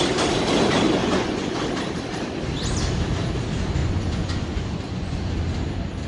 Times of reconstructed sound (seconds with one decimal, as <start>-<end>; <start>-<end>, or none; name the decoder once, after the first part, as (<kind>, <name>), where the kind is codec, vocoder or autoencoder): 1.0-1.6 (vocoder, Vocos); 3.8-5.3